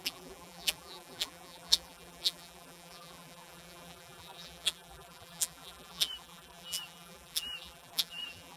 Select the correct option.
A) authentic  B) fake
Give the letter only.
B